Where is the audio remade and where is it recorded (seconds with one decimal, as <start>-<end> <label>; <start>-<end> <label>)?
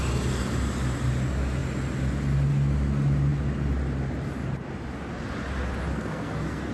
0.0-5.9 recorded; 5.9-6.7 remade